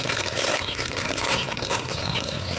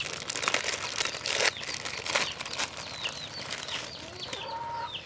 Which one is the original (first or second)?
second